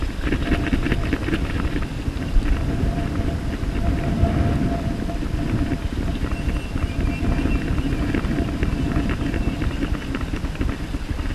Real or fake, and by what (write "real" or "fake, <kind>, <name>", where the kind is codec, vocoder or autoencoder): real